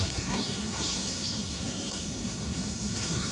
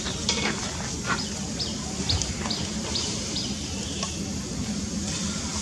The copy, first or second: first